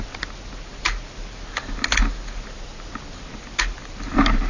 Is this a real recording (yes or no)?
yes